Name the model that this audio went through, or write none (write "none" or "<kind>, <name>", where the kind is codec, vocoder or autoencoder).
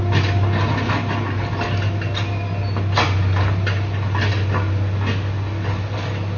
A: none